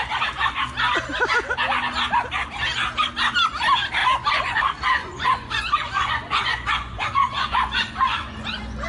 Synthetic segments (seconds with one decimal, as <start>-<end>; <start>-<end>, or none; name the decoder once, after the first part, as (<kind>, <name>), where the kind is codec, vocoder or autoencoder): 4.0-4.6 (vocoder, Vocos); 5.0-8.9